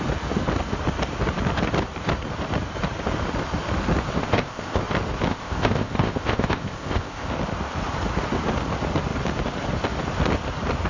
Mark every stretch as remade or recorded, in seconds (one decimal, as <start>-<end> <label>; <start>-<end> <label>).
0.0-4.2 recorded; 4.2-4.8 remade; 4.8-5.3 recorded; 5.3-7.3 remade; 7.3-10.9 recorded